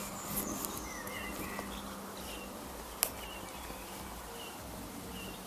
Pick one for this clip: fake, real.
real